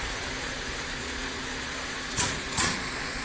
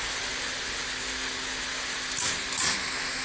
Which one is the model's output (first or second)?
first